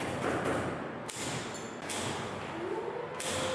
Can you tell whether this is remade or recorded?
recorded